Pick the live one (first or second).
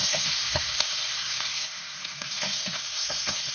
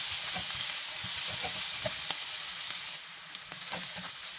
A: second